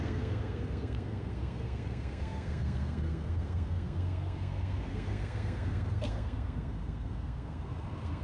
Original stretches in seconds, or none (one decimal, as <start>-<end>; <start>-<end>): none